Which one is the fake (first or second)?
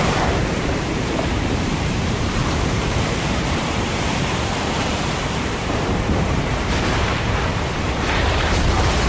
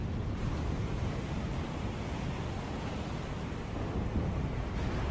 first